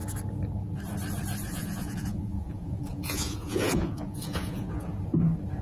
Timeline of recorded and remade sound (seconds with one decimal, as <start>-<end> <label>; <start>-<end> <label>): 0.0-1.5 recorded; 1.5-4.9 remade; 4.9-5.6 recorded